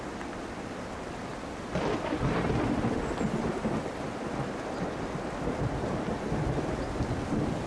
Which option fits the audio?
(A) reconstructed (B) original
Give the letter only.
B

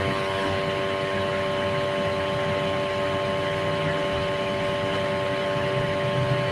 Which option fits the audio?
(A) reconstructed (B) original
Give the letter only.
B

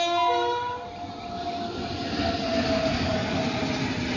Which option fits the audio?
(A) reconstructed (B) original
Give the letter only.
B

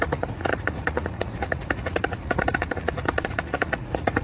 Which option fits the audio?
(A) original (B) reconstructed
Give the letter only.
B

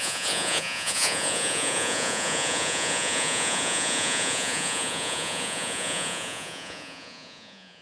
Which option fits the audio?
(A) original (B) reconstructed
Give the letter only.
B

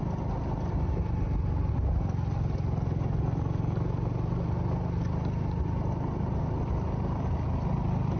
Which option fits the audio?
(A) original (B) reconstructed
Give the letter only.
A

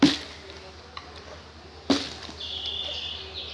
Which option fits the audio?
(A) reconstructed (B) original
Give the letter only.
B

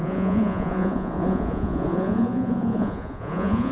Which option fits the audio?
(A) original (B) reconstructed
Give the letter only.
B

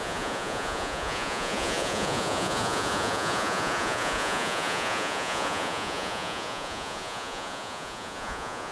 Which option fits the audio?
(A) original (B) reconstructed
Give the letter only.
B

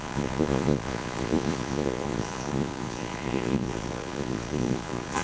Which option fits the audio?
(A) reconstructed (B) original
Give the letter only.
A